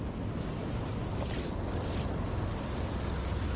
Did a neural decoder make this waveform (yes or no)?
no